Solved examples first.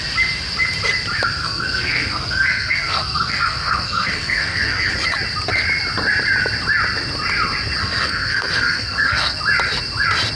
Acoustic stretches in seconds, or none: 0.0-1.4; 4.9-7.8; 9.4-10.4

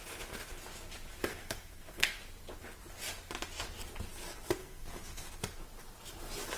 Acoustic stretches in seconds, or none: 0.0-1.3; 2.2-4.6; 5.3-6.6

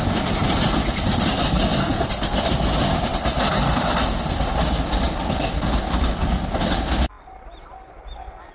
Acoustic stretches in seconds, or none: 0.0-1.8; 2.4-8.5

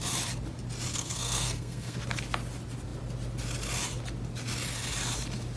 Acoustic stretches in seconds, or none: 0.0-0.9; 2.0-5.6

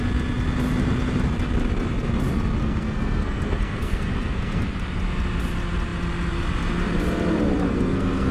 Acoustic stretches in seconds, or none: 0.0-2.6; 4.7-7.7

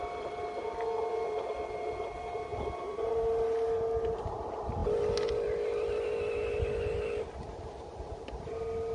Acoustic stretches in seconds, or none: 0.0-8.9